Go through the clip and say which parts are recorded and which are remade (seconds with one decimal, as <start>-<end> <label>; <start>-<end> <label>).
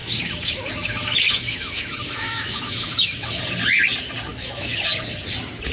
0.0-3.4 remade; 3.4-4.3 recorded; 4.3-4.8 remade; 4.8-5.7 recorded